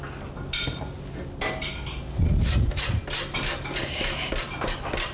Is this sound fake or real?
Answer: real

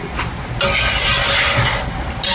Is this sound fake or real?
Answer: real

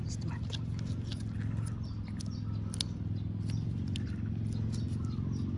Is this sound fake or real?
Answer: real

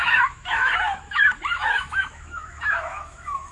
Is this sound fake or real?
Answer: fake